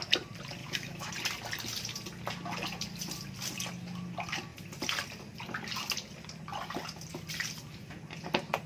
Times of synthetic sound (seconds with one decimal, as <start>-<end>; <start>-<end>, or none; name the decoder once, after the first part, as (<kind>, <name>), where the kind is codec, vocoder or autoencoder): 0.6-1.1 (autoencoder, DAC-VAE)